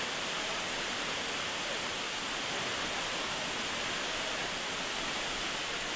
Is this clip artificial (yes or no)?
no